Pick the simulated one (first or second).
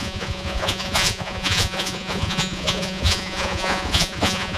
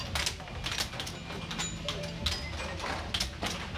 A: first